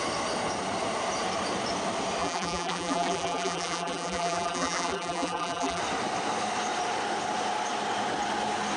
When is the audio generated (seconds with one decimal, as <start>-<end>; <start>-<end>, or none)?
2.2-5.8